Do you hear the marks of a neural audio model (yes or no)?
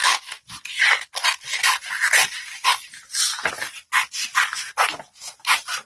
no